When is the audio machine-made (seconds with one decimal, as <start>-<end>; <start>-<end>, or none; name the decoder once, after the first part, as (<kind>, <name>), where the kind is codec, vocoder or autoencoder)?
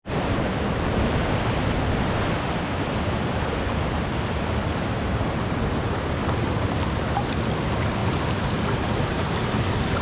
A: 4.6-6.0 (vocoder, BigVGAN v2); 8.0-9.2